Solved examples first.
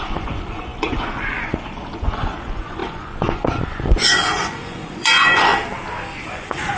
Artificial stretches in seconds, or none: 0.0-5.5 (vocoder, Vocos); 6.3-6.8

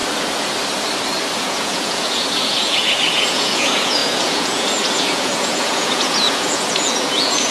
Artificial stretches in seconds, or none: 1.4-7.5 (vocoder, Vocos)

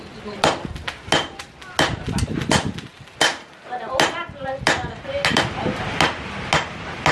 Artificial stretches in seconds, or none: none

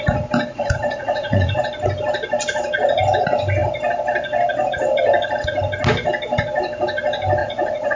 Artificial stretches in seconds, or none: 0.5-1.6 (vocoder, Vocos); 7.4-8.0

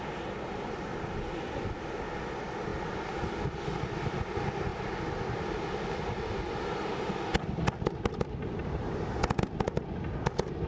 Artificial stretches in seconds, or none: none